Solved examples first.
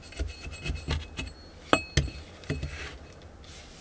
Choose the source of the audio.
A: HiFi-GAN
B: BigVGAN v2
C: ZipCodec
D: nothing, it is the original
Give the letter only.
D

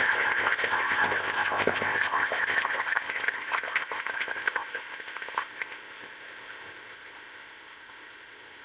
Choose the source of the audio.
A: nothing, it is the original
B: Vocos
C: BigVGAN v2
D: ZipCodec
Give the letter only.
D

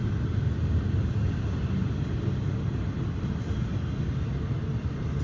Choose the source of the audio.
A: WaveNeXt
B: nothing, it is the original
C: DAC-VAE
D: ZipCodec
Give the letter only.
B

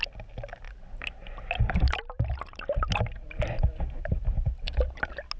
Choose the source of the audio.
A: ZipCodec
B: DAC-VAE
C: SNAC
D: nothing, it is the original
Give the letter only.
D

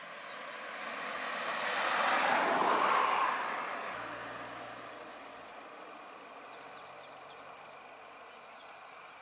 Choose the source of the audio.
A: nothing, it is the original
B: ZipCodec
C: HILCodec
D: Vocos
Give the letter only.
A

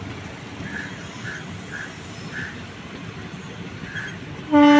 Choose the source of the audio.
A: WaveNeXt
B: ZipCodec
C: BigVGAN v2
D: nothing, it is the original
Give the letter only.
D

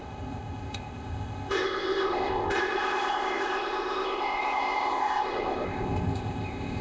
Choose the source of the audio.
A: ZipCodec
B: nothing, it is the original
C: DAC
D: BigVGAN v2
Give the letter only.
A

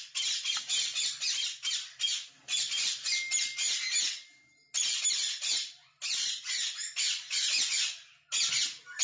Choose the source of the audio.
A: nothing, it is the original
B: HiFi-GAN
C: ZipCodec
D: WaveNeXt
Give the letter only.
A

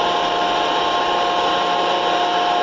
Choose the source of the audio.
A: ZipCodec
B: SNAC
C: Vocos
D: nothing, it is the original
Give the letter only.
D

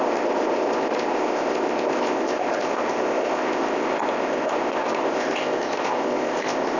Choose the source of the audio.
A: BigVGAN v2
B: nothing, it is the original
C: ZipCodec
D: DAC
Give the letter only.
C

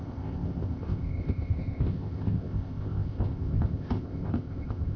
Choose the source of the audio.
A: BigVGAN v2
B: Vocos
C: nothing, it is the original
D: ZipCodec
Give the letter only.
D